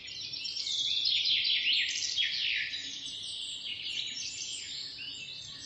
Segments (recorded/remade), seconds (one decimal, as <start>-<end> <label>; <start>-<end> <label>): 0.0-2.8 recorded; 2.8-5.1 remade; 5.1-5.7 recorded

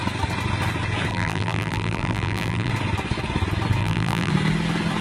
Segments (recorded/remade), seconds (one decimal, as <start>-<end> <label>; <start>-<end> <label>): 0.0-1.1 recorded; 1.1-2.7 remade; 2.7-3.8 recorded; 3.8-4.3 remade; 4.3-5.0 recorded

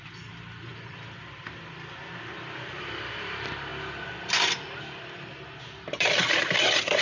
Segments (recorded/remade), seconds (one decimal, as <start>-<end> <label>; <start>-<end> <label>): 0.0-3.7 remade; 3.7-4.3 recorded; 4.3-7.0 remade

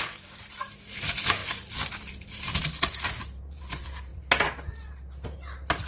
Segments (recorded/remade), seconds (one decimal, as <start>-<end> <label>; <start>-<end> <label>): 0.0-4.1 remade; 4.1-5.9 recorded

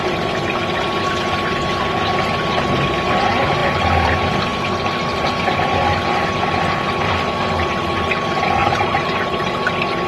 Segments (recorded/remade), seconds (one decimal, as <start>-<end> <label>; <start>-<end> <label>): 0.0-8.6 recorded; 8.6-9.5 remade; 9.5-10.1 recorded

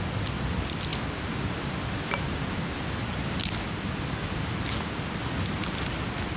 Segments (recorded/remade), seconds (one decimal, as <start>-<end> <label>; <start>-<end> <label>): 0.0-6.4 recorded

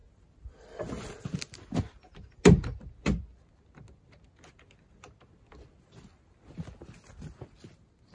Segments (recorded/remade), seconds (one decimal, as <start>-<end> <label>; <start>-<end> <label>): 0.0-8.1 recorded